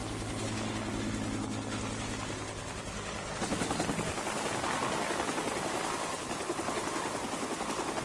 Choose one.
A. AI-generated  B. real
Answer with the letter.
B